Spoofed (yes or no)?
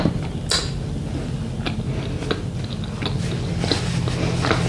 no